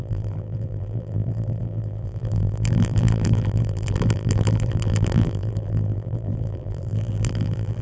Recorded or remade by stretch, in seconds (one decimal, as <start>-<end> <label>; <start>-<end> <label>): 0.0-7.8 remade